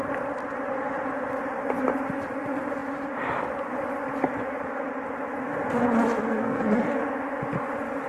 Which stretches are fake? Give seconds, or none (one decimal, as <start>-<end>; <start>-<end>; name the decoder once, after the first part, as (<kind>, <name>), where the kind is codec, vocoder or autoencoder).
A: 6.2-7.0 (codec, SNAC)